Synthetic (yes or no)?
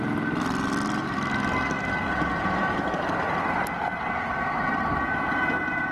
no